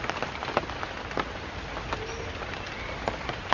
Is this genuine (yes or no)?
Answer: yes